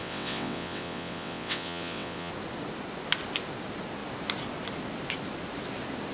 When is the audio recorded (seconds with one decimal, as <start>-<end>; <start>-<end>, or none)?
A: 2.3-6.1